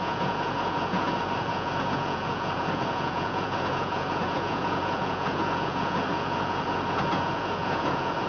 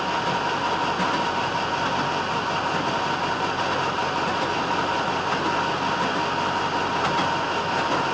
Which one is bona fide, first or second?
second